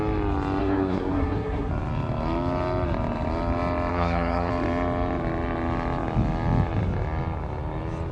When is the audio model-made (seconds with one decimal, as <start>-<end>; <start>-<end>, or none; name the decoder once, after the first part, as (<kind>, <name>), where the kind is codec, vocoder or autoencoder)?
0.6-1.7 (codec, SNAC); 3.9-4.5